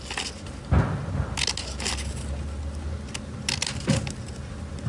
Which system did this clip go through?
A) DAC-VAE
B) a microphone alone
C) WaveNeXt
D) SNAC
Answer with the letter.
B